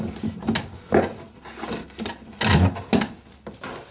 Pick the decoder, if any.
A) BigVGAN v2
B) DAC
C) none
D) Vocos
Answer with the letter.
C